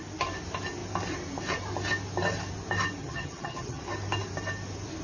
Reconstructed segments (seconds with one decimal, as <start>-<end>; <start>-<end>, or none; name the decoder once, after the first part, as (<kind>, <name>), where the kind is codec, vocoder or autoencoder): 3.0-3.8 (vocoder, HiFi-GAN)